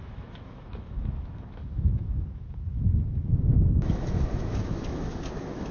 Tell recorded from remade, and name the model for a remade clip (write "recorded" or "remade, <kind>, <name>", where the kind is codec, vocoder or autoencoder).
remade, autoencoder, DAC-VAE